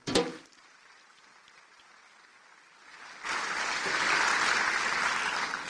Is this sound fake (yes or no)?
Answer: no